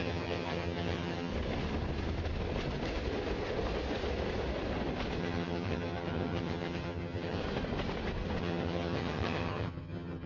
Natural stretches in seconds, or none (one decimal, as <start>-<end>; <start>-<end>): 1.3-5.2; 7.4-8.4